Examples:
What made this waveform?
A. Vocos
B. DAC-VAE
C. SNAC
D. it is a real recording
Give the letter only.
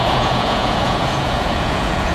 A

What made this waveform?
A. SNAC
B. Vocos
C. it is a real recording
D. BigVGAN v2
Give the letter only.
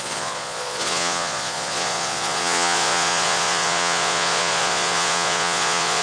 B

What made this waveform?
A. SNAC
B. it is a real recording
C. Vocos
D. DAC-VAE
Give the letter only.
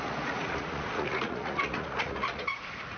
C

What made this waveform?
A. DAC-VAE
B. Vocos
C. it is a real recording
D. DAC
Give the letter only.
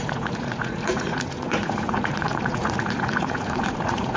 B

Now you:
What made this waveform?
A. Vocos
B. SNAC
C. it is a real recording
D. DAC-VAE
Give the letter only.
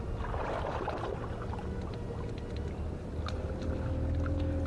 C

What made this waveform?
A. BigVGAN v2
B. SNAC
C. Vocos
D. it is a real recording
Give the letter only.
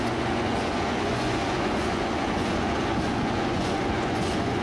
C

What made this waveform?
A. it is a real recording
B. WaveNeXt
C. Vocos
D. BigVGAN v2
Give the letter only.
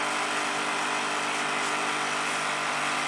A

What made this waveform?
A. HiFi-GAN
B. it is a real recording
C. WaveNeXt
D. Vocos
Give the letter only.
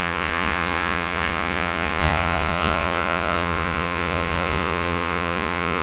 D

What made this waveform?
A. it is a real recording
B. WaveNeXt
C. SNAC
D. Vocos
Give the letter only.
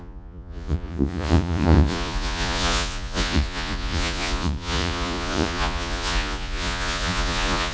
D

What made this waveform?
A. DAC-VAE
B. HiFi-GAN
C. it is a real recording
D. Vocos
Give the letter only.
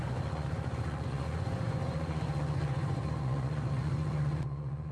D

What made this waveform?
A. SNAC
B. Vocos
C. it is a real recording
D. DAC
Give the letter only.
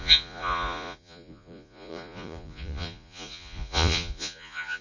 B